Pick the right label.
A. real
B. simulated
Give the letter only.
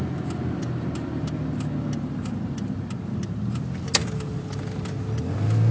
A